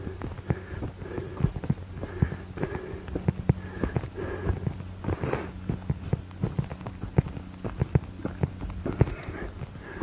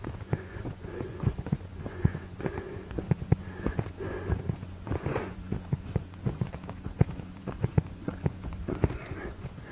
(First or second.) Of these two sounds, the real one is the first